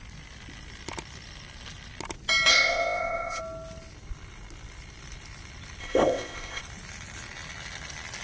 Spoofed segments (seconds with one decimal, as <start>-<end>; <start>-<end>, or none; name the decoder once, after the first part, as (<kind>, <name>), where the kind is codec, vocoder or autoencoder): 2.5-3.4 (codec, ZipCodec); 5.8-6.6